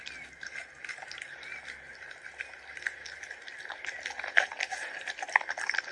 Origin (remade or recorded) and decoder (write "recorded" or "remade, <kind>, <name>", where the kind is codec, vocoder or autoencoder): recorded